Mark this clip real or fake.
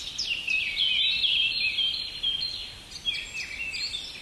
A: real